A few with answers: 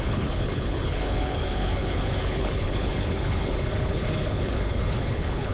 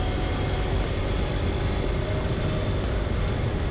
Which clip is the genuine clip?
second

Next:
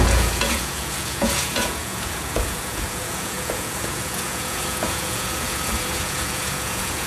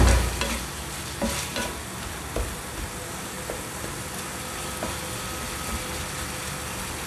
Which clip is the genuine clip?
second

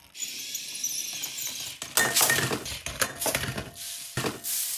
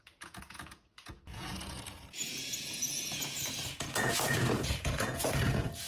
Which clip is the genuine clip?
first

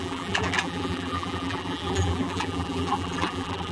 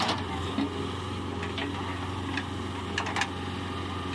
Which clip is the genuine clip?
second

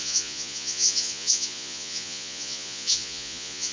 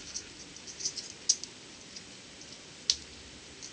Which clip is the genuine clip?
second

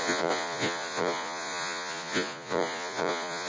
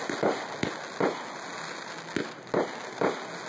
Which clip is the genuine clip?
second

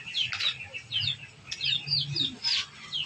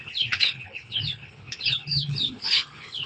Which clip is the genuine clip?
first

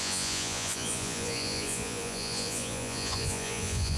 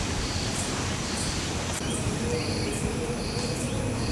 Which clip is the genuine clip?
second